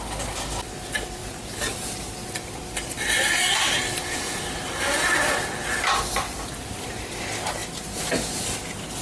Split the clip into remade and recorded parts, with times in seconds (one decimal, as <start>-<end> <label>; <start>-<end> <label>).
0.0-1.2 recorded; 1.2-5.3 remade; 5.3-9.0 recorded

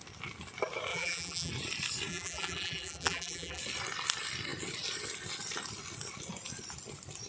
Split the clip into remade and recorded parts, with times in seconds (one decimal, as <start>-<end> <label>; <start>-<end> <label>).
0.0-0.9 recorded; 0.9-1.5 remade; 1.5-2.1 recorded; 2.1-3.6 remade; 3.6-7.3 recorded

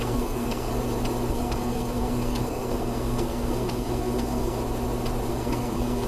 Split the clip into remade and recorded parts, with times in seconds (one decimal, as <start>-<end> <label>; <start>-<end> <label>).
0.0-0.7 remade; 0.7-1.3 recorded; 1.3-4.6 remade; 4.6-5.3 recorded; 5.3-6.1 remade